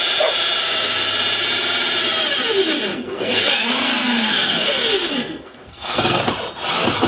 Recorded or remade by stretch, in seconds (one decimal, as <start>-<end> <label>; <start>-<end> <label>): 0.0-2.9 recorded; 2.9-6.2 remade; 6.2-7.1 recorded